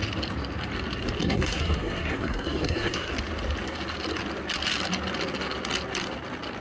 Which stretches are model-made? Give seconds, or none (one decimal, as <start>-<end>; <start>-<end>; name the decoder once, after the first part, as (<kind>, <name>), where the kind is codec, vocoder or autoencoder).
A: 1.2-3.1 (codec, SNAC)